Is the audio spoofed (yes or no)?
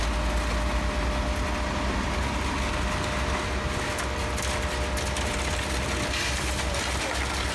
no